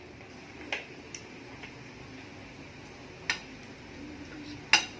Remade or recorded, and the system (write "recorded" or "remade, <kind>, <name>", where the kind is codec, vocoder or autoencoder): recorded